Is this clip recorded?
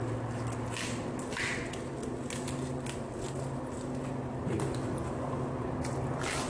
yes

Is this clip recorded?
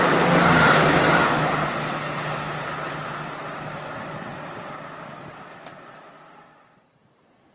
yes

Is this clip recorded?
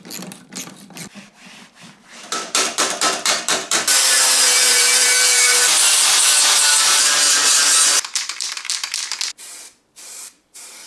no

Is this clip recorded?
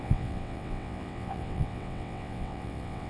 no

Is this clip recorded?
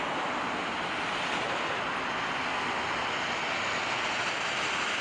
yes